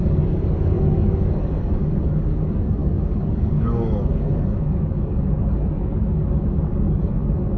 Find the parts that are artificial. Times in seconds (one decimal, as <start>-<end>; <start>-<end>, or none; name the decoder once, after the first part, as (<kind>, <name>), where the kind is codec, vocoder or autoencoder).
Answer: 0.0-7.6 (codec, DAC)